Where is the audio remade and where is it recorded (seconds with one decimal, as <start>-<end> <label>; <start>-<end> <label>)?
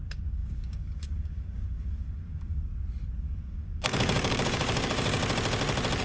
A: 0.0-2.7 remade; 2.7-3.2 recorded; 3.2-5.2 remade; 5.2-6.0 recorded